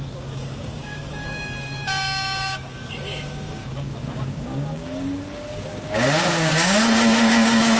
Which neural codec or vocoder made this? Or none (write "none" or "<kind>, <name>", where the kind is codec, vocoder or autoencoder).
codec, DAC